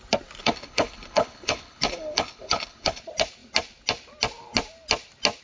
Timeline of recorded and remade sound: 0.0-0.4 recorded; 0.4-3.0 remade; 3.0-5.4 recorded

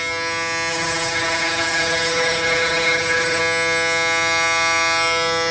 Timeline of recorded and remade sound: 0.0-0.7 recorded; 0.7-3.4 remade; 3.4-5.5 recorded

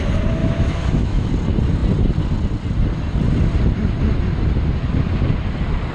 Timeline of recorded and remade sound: 0.0-0.4 recorded; 0.4-1.3 remade; 1.3-5.9 recorded

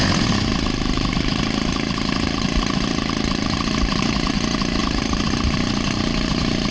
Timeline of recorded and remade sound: 0.0-0.5 recorded; 0.5-4.3 remade; 4.3-4.8 recorded; 4.8-6.7 remade

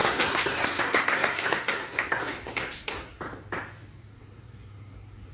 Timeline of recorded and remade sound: 0.0-3.2 remade; 3.2-4.1 recorded; 4.1-5.3 remade